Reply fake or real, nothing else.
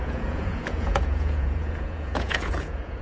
fake